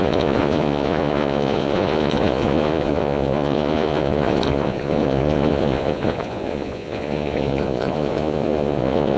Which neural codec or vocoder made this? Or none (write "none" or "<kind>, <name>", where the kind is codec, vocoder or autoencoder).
vocoder, Vocos